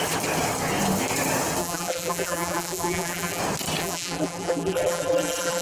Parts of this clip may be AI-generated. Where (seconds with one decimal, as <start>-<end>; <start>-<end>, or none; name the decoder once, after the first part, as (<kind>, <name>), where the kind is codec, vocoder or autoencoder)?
1.6-3.4 (vocoder, BigVGAN v2); 3.8-5.6